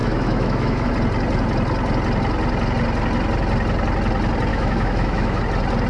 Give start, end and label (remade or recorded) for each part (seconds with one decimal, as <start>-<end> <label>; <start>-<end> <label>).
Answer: 0.0-0.9 remade; 0.9-4.5 recorded; 4.5-5.4 remade; 5.4-5.9 recorded